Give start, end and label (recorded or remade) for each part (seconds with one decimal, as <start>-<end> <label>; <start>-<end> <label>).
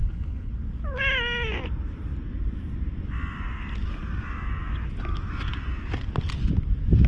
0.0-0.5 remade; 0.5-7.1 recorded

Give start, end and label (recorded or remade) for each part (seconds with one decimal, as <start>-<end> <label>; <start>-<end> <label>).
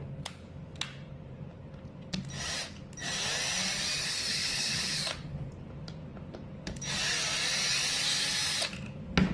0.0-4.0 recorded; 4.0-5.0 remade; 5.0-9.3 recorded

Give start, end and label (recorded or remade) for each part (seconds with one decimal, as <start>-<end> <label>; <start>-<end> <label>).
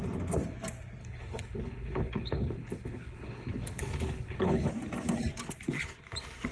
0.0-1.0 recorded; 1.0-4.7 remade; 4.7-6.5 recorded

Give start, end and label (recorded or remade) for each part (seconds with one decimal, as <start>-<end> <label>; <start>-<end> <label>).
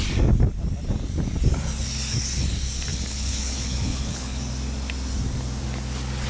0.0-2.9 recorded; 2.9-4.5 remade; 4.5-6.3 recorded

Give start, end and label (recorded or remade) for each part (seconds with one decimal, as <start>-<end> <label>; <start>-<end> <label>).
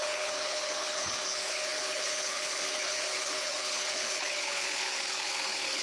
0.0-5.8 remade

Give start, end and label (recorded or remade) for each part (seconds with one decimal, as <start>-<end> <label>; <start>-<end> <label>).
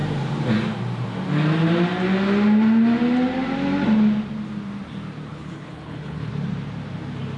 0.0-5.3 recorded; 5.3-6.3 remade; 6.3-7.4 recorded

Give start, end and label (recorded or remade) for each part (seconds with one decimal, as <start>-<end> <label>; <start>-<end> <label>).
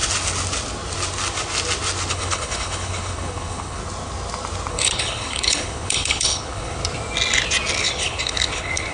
0.0-2.1 recorded; 2.1-3.8 remade; 3.8-4.7 recorded; 4.7-6.8 remade; 6.8-7.8 recorded; 7.8-8.9 remade